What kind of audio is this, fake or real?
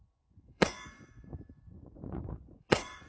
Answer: fake